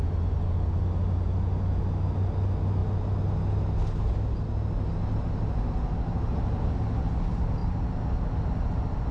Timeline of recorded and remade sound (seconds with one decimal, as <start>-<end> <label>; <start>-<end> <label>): 0.0-6.3 recorded; 6.3-6.9 remade; 6.9-9.1 recorded